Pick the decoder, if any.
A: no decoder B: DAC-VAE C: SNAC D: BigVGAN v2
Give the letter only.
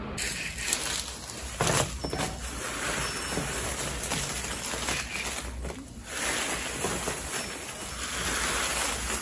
A